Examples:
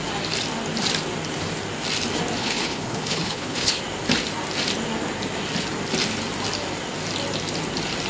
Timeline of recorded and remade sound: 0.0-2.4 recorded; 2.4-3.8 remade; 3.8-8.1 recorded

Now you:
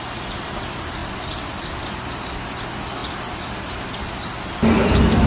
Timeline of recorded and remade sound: 0.0-5.3 recorded

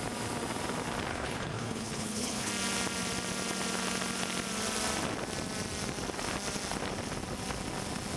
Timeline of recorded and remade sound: 0.0-1.1 recorded; 1.1-2.5 remade; 2.5-8.2 recorded

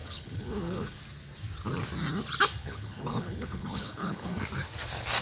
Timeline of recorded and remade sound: 0.0-1.0 remade; 1.0-2.6 recorded; 2.6-4.4 remade; 4.4-5.2 recorded